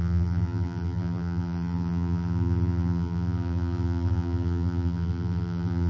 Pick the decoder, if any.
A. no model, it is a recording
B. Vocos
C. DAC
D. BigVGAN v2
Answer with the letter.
D